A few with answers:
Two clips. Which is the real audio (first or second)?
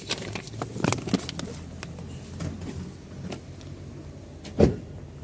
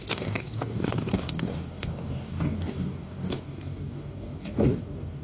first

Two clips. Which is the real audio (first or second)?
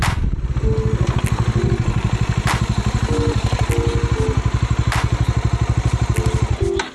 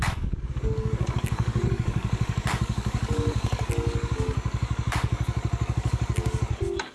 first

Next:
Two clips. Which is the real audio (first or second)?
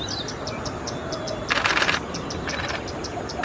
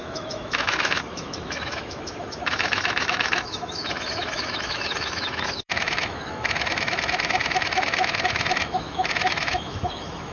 first